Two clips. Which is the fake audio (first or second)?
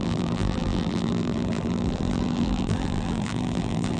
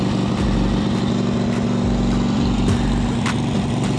first